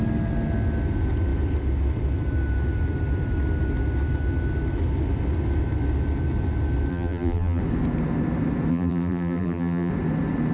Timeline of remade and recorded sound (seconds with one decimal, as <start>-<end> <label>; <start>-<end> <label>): 0.0-6.9 recorded; 6.9-7.6 remade; 7.6-8.7 recorded; 8.7-9.9 remade; 9.9-10.5 recorded